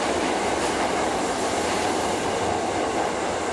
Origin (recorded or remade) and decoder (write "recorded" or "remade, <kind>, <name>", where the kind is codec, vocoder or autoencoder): recorded